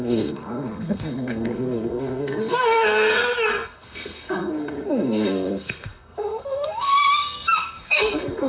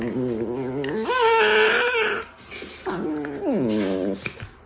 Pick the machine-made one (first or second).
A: first